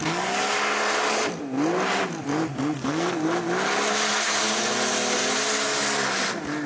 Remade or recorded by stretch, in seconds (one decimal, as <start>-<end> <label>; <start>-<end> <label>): 0.0-2.5 recorded; 2.5-3.2 remade; 3.2-6.7 recorded